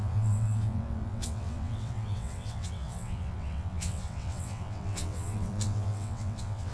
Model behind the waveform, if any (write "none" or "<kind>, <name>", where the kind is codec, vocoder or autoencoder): vocoder, WaveNeXt